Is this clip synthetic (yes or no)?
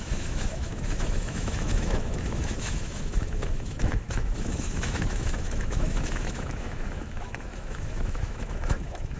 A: yes